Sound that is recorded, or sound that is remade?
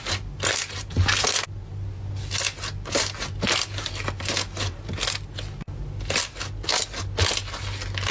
recorded